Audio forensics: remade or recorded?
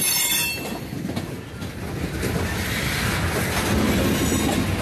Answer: recorded